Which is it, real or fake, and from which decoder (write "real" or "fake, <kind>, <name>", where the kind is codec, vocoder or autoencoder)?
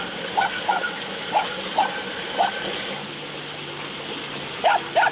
real